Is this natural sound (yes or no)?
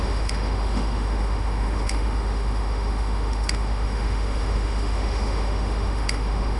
no